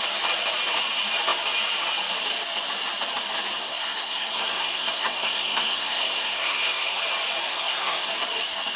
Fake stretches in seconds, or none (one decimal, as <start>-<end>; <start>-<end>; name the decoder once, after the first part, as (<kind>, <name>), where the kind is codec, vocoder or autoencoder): 3.6-7.0 (codec, SNAC); 7.5-8.1